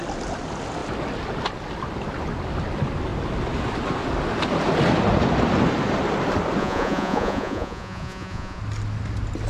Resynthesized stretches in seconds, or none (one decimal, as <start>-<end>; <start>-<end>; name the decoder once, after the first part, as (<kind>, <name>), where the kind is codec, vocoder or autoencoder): 6.6-8.6 (vocoder, Vocos)